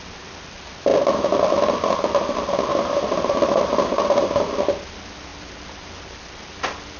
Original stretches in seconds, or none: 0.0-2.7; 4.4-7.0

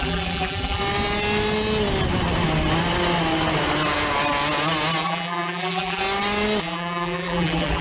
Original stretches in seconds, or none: 0.8-5.0; 6.0-6.6

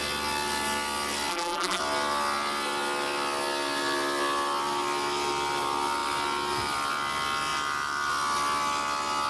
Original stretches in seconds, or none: 0.0-1.3; 1.8-9.3

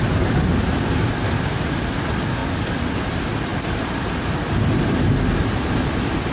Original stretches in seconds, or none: 0.0-6.3